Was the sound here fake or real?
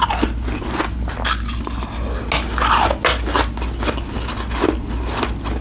real